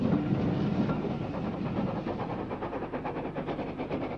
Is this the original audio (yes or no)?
yes